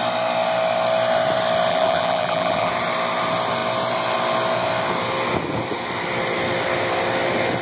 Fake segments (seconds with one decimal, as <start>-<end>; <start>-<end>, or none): 1.7-2.7